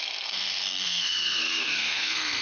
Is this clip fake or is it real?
fake